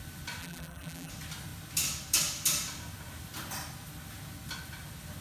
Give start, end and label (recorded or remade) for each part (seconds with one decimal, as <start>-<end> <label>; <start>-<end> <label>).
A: 0.0-0.4 recorded; 0.4-1.1 remade; 1.1-5.2 recorded